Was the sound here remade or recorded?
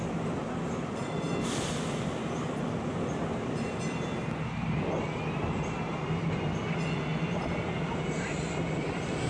recorded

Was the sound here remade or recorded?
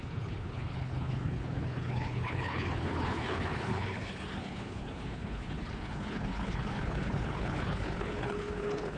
remade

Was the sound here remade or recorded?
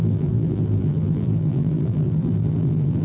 remade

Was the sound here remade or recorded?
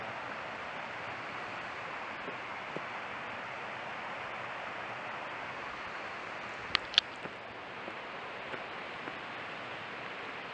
recorded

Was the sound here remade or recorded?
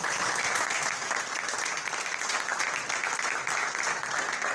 recorded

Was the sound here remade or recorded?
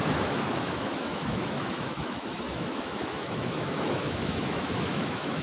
remade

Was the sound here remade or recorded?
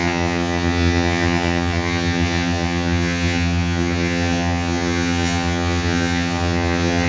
remade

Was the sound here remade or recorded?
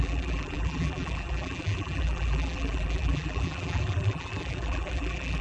remade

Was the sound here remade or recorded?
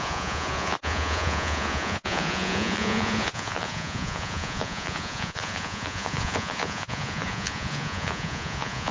remade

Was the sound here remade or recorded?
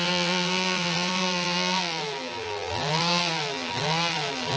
remade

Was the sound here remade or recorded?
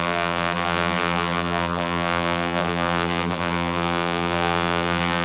remade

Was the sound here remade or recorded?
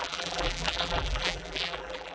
remade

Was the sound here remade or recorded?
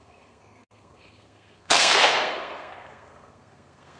remade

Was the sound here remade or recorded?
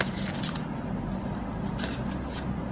recorded